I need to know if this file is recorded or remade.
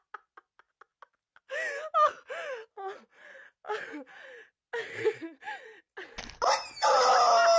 recorded